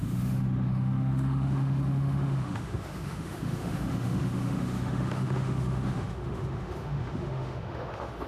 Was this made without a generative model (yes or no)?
no